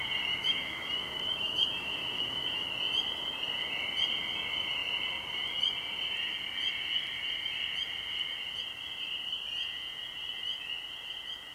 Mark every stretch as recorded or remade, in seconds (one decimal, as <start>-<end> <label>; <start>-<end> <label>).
0.0-0.4 recorded; 0.4-2.7 remade; 2.7-11.5 recorded